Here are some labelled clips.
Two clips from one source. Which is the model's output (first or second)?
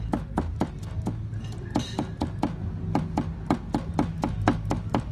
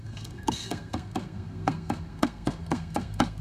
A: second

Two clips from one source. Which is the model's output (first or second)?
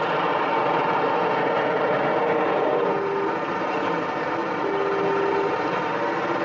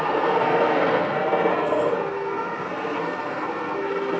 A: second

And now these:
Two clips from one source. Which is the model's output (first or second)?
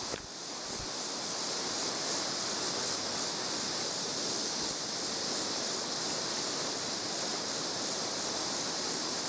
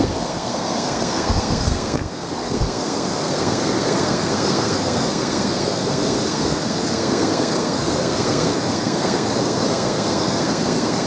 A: second